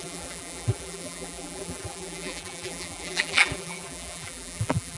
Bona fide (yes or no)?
no